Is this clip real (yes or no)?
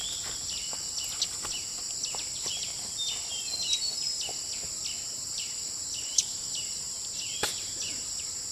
yes